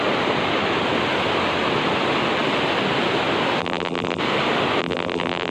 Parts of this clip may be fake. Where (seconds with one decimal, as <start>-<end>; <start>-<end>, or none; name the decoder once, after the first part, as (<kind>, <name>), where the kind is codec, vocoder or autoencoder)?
3.6-4.2 (vocoder, BigVGAN v2); 4.8-5.5